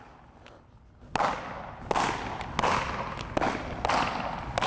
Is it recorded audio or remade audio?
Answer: recorded